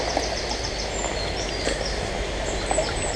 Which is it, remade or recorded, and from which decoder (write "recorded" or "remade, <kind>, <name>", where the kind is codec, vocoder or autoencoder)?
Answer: recorded